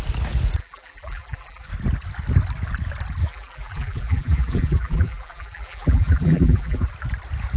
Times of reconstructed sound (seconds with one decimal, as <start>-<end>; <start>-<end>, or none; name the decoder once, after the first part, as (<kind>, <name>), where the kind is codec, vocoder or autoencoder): 0.6-1.7 (vocoder, BigVGAN v2); 3.2-6.9